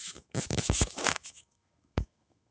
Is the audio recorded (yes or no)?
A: no